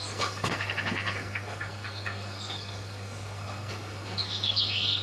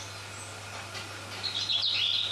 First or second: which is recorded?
second